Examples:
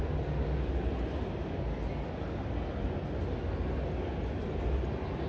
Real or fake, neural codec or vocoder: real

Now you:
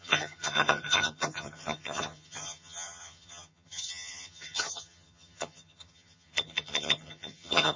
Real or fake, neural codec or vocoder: fake, vocoder, HiFi-GAN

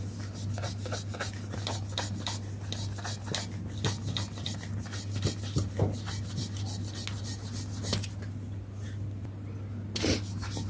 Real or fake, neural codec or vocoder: real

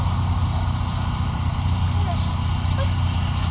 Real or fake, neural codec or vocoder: real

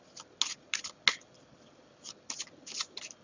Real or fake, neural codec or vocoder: real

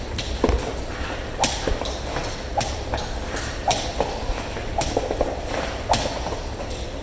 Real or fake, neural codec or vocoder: real